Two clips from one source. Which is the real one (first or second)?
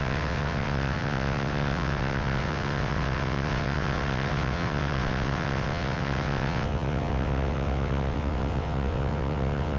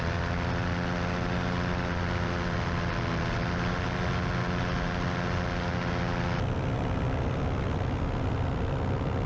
second